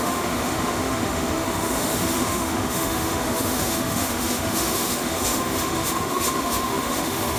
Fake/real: fake